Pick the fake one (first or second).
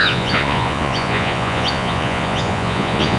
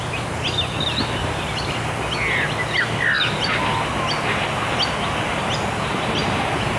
first